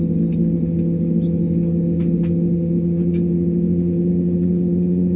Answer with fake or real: real